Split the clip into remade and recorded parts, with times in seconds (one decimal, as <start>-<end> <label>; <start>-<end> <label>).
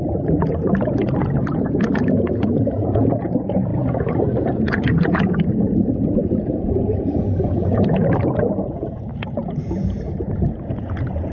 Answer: 0.0-8.0 remade; 8.0-8.6 recorded; 8.6-11.3 remade